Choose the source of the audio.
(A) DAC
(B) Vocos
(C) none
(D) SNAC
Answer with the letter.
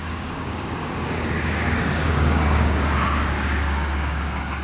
A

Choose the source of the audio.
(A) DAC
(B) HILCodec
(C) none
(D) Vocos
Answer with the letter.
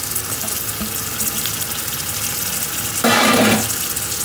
C